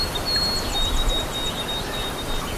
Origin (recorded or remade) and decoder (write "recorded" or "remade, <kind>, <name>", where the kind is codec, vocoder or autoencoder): recorded